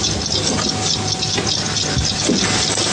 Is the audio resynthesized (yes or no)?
no